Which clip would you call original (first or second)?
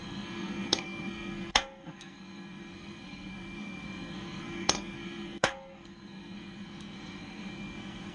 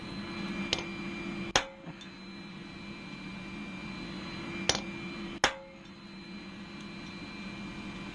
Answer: second